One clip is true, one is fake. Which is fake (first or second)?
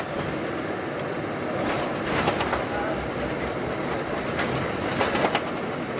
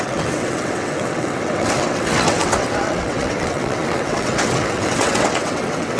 second